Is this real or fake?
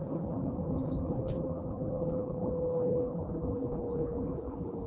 fake